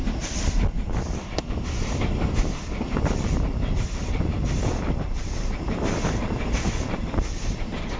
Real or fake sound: fake